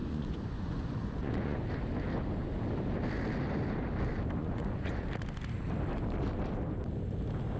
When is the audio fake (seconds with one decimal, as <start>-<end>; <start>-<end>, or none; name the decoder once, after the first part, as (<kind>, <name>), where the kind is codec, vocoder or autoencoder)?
0.0-1.7 (vocoder, Vocos); 4.4-5.0